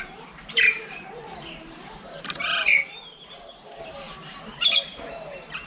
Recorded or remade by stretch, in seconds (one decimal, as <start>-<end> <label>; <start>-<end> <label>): 0.0-5.7 remade